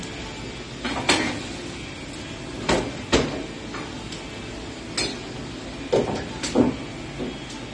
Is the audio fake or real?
real